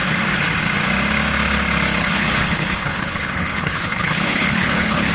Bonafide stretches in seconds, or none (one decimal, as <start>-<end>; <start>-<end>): 0.0-2.0